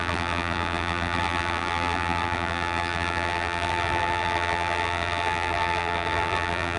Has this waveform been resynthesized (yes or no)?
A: yes